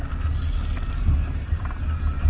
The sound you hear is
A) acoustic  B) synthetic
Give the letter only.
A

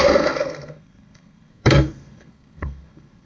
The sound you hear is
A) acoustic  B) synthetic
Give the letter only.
B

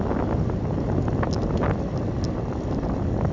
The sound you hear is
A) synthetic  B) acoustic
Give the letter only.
B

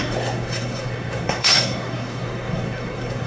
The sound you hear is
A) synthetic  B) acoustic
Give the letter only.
A